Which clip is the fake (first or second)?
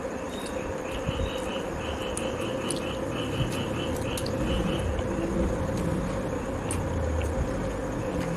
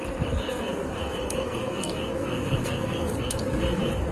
second